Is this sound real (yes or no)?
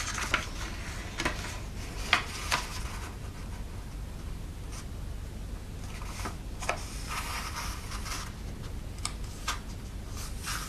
yes